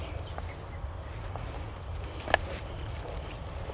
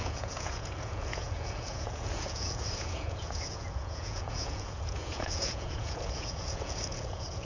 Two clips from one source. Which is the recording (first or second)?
first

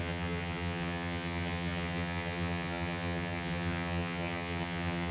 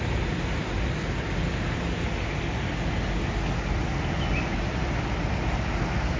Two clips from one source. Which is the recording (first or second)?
second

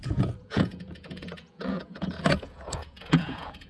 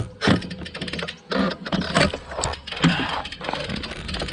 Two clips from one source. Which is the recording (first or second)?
second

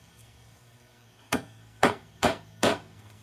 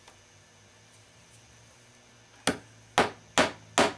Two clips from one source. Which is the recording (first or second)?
second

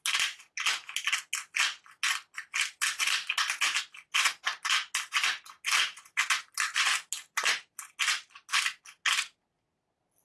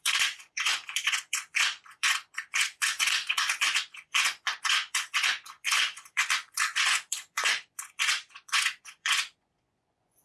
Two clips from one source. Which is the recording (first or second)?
first